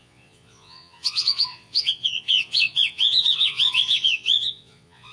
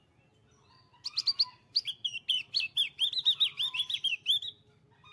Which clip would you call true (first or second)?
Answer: second